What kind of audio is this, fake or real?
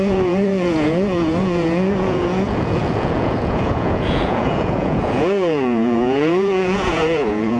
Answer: fake